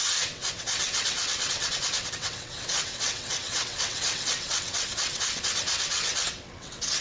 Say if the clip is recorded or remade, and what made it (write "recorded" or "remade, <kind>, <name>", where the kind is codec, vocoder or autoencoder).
remade, vocoder, WaveNeXt